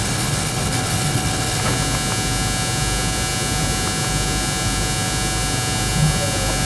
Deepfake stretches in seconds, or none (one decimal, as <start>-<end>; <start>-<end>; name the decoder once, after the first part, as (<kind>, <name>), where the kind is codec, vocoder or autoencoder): 0.0-1.6 (codec, HILCodec)